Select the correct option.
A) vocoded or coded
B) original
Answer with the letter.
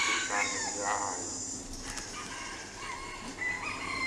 B